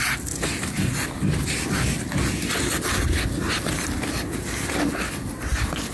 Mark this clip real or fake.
real